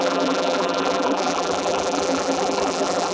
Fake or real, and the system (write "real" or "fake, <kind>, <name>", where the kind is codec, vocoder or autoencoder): fake, vocoder, BigVGAN v2